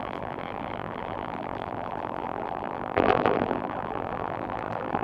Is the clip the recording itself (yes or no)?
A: no